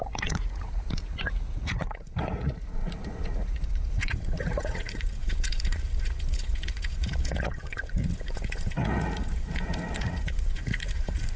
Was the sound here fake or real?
fake